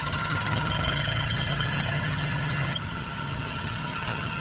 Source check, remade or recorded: remade